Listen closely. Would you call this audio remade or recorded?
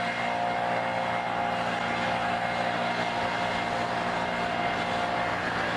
recorded